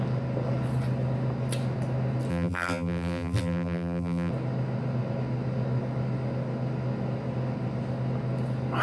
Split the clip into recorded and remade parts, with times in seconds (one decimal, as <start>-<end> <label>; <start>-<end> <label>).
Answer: 0.0-2.3 recorded; 2.3-4.3 remade; 4.3-8.8 recorded